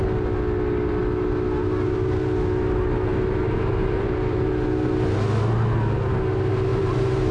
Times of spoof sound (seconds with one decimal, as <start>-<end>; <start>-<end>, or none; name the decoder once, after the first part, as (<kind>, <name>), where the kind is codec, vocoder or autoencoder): 3.1-4.5 (vocoder, BigVGAN v2); 6.7-7.3